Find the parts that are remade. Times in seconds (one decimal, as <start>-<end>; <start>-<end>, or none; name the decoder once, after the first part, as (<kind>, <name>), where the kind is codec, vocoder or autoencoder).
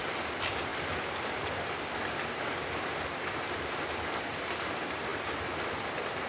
none